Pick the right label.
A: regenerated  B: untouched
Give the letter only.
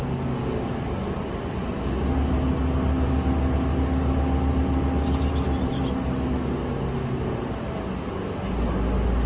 B